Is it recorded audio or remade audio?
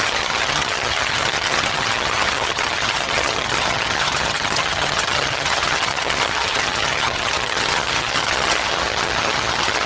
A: remade